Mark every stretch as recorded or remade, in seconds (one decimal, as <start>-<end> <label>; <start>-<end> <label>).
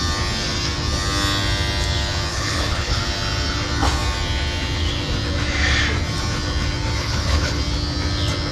0.0-2.3 recorded; 2.3-3.0 remade; 3.0-7.0 recorded; 7.0-7.6 remade; 7.6-8.5 recorded